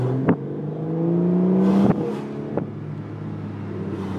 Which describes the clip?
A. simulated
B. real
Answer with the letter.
B